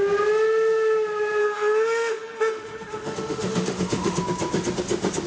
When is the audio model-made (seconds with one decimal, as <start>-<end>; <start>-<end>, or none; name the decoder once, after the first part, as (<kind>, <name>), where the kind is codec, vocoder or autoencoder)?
1.4-4.2 (autoencoder, DAC-VAE)